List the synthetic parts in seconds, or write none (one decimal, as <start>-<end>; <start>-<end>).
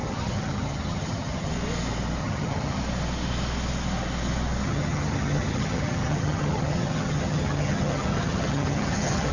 0.0-1.5; 2.2-2.8; 4.6-9.3